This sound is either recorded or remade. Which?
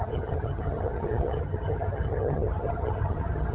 remade